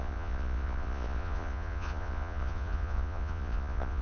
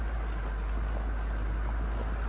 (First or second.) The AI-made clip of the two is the first